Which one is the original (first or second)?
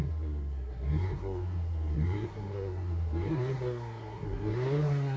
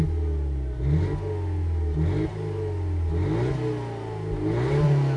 second